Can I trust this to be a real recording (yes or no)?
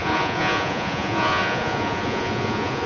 no